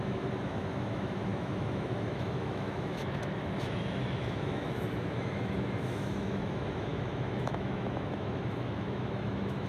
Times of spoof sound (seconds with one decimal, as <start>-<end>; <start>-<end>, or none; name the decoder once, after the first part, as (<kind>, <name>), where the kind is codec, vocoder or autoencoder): 0.0-9.7 (autoencoder, DAC-VAE)